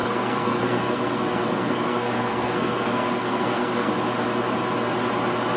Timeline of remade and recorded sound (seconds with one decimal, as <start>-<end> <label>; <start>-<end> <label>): 0.0-3.9 remade; 3.9-5.6 recorded